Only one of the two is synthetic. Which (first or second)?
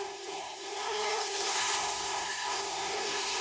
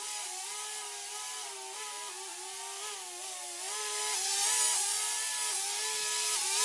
first